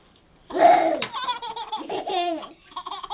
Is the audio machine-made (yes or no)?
yes